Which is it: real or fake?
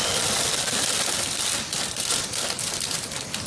real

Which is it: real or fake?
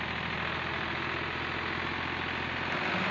real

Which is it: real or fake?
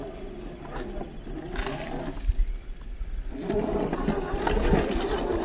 real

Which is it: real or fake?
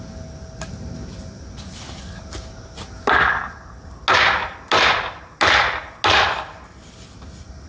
real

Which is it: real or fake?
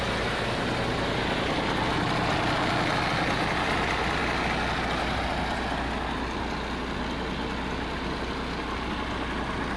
real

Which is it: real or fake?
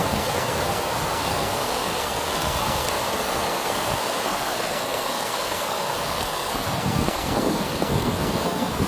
fake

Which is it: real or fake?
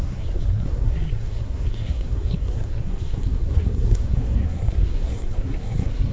fake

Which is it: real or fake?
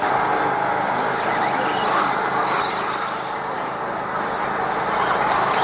real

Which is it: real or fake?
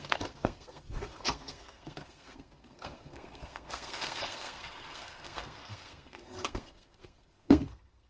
fake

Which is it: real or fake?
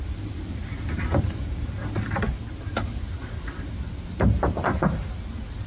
real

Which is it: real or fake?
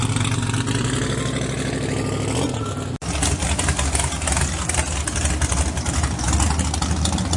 real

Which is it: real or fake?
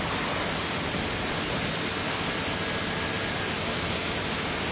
real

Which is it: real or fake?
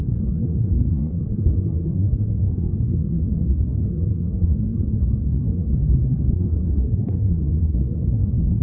fake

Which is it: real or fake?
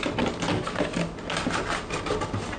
real